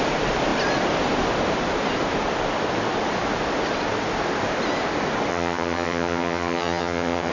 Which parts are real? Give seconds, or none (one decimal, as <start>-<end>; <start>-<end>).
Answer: 0.0-5.3